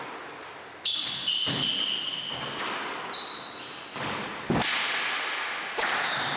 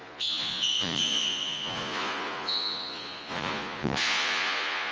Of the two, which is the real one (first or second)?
first